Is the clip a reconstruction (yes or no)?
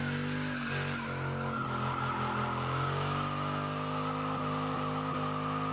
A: no